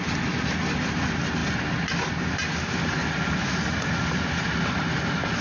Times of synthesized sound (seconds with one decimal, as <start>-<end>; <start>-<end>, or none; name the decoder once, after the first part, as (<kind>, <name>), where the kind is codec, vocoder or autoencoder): none